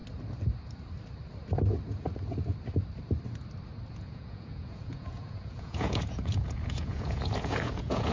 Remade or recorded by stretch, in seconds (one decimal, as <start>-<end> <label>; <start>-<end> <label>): 0.0-3.9 recorded; 3.9-8.1 remade